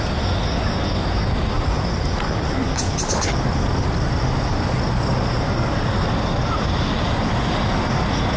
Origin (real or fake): real